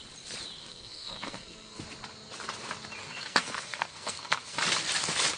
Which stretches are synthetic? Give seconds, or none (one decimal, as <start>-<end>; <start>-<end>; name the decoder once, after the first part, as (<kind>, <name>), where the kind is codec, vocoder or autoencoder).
0.6-1.8 (codec, SNAC); 3.0-4.6